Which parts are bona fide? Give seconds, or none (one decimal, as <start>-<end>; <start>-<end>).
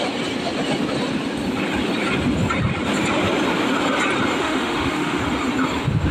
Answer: 0.0-4.4; 5.2-6.1